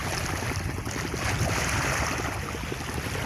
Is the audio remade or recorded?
recorded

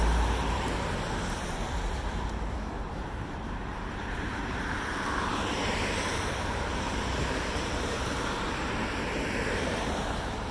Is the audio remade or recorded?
remade